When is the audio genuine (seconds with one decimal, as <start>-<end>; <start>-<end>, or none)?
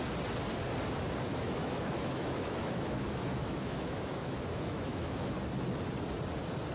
0.0-1.3; 5.3-6.7